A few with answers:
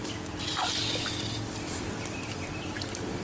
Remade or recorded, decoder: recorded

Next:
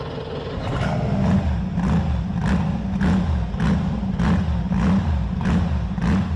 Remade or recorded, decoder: recorded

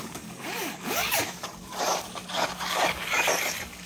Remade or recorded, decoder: remade, codec, DAC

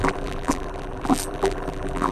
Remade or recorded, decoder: remade, vocoder, BigVGAN v2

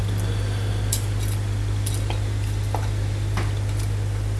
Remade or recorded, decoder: recorded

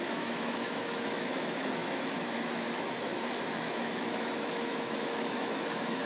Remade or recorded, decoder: remade, autoencoder, DAC-VAE